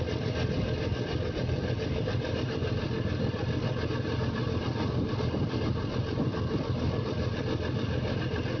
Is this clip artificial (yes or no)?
no